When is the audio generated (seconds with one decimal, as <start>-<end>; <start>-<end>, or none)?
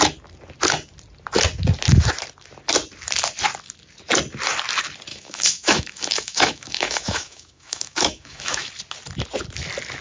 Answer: 5.1-8.7